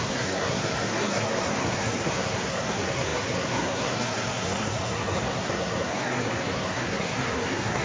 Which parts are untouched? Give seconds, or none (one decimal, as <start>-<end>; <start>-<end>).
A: none